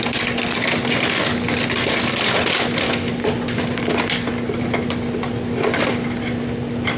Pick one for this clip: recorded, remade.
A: recorded